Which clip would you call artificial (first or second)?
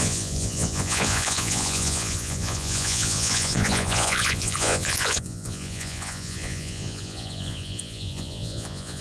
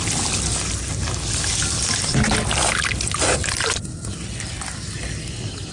first